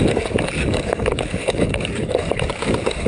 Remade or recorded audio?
remade